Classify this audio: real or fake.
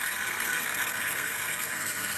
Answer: fake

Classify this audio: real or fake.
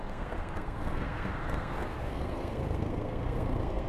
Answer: fake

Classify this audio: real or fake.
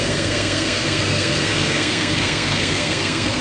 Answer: fake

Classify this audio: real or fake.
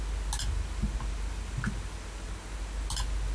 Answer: real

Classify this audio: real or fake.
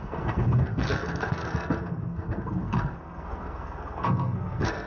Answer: fake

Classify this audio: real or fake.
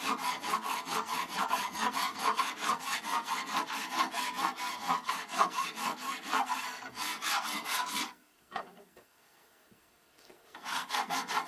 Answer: fake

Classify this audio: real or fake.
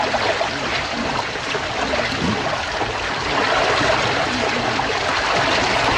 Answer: real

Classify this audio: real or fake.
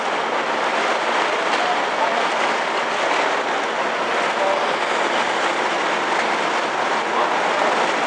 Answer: real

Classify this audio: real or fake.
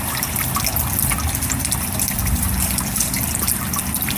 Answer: real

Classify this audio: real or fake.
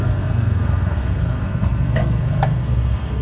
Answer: fake